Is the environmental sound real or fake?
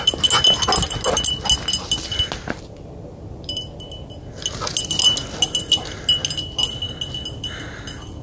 real